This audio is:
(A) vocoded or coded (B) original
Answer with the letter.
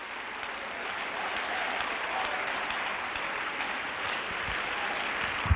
B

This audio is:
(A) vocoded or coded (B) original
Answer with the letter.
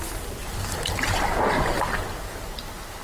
B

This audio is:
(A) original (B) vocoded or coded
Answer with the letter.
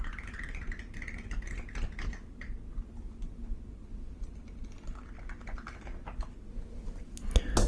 A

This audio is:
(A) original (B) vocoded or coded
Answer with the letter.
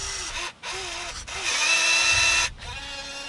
A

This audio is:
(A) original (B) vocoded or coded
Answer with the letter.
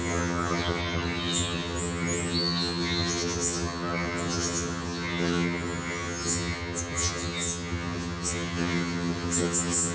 B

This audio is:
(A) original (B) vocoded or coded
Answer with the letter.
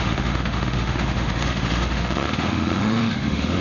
B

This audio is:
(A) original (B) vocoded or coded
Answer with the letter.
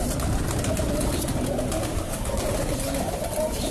A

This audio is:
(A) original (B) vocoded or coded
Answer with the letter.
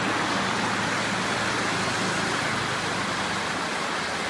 A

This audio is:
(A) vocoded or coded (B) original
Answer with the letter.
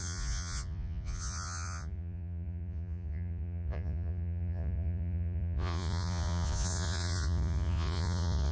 A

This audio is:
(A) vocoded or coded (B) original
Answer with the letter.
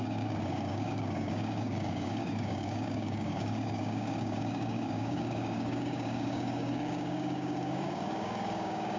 A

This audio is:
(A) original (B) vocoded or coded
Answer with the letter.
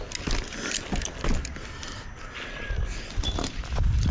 A